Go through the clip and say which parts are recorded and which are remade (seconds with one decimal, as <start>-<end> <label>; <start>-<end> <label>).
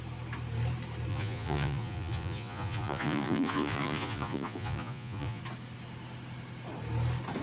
0.0-1.1 recorded; 1.1-5.4 remade; 5.4-7.4 recorded